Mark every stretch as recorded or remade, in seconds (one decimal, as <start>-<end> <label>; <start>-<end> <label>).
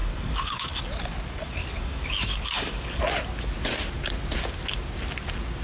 0.0-0.8 remade; 0.8-1.6 recorded; 1.6-3.0 remade; 3.0-5.6 recorded